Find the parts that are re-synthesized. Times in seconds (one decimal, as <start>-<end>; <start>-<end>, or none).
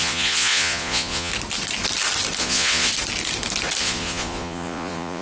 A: 0.0-1.3; 2.4-2.9; 3.8-5.2